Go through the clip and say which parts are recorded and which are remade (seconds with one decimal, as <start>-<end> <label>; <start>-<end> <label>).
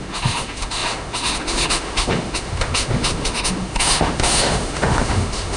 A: 0.0-5.6 remade